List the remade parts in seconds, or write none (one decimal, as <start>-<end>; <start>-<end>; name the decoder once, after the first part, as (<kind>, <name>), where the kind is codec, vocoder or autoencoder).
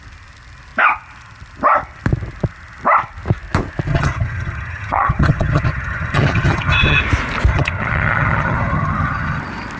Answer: 3.9-7.0 (vocoder, HiFi-GAN); 7.5-9.4